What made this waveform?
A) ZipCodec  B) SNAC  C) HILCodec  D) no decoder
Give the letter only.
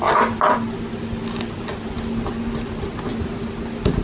D